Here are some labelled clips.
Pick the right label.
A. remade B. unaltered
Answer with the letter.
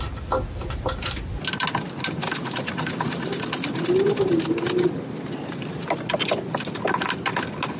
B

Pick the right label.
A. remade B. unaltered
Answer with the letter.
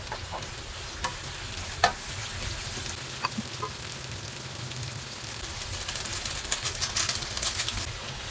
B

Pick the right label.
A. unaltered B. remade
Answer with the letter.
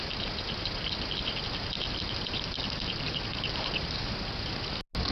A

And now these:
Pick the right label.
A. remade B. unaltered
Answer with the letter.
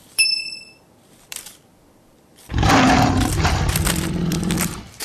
A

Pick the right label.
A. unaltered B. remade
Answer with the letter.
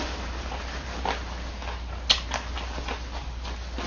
A